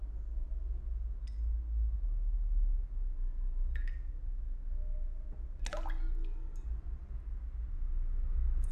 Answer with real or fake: real